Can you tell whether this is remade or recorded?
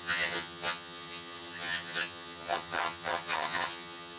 remade